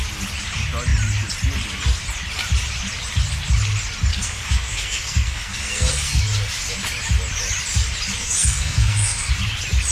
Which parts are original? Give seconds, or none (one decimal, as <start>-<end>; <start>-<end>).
0.0-4.1; 6.2-8.2; 9.3-9.9